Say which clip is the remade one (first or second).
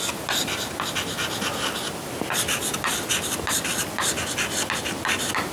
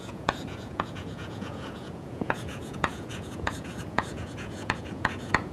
second